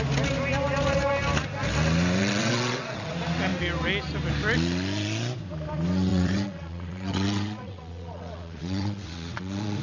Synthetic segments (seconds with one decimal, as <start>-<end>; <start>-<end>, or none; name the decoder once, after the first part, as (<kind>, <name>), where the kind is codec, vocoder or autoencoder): 2.2-3.1 (vocoder, WaveNeXt); 6.1-9.8